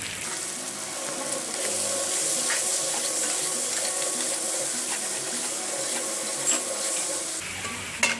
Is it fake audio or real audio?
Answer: real